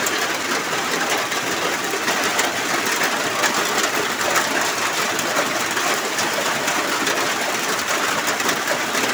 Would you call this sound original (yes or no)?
yes